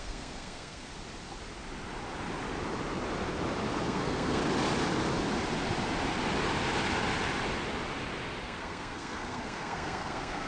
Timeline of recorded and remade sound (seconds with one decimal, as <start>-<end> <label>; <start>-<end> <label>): 0.0-0.9 remade; 0.9-3.8 recorded; 3.8-4.4 remade; 4.4-8.4 recorded; 8.4-10.5 remade